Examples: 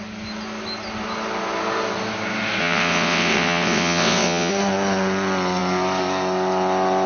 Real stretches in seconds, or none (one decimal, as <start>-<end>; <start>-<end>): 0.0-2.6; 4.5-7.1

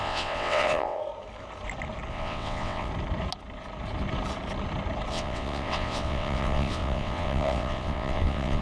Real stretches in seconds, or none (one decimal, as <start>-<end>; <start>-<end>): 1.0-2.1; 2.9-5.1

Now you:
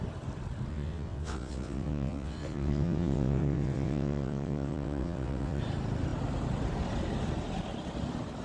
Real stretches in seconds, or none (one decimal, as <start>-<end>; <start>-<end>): 0.0-0.7; 5.6-8.4